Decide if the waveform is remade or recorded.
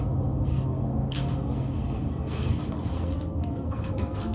remade